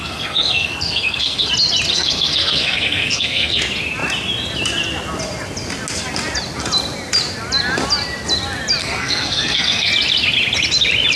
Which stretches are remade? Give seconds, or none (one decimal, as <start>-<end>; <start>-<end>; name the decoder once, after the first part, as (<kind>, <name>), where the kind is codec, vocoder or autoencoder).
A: 0.0-1.5 (codec, SNAC); 1.9-3.6; 8.8-9.9